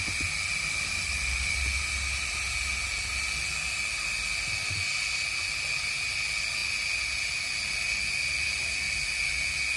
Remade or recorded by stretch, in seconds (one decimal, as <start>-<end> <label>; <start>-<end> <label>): 0.0-9.8 recorded